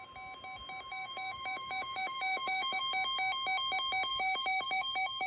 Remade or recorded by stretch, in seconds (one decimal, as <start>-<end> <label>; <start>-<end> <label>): 0.0-0.9 recorded; 0.9-2.8 remade; 2.8-4.1 recorded; 4.1-5.3 remade